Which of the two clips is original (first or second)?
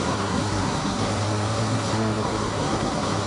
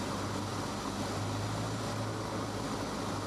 second